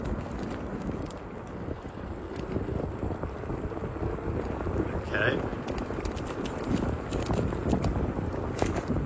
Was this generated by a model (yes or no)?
yes